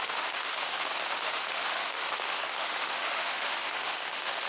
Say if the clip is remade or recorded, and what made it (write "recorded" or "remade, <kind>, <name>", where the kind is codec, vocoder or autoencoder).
remade, autoencoder, DAC-VAE